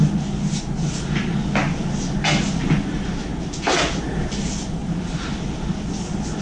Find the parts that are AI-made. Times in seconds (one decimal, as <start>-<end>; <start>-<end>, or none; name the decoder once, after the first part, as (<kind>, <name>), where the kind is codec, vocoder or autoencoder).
4.8-5.3 (vocoder, BigVGAN v2)